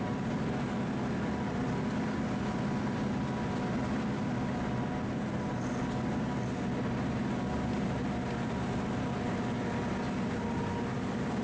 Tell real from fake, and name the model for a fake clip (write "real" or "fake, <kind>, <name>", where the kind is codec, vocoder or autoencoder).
real